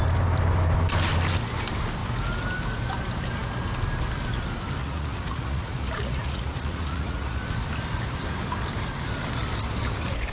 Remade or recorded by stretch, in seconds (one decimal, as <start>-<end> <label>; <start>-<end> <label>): 0.0-4.8 recorded; 4.8-7.5 remade; 7.5-10.3 recorded